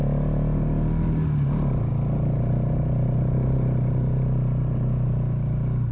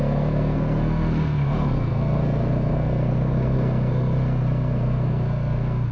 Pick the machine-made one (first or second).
second